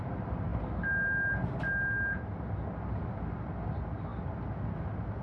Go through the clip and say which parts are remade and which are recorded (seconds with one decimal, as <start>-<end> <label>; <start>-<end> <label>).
0.0-5.2 recorded